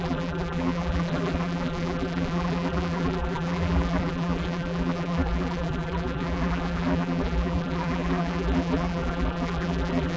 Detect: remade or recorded remade